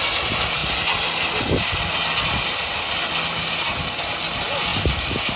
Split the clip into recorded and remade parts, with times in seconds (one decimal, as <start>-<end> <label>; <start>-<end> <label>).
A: 0.0-5.4 recorded